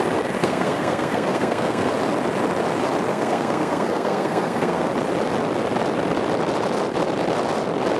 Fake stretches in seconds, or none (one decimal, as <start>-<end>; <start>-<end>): 0.4-1.9; 3.1-4.9